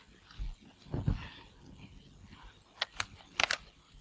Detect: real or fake real